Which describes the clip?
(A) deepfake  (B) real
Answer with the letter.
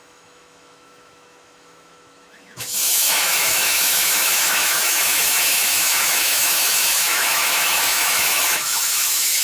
A